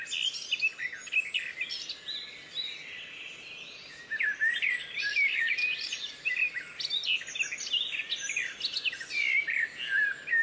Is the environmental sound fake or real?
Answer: real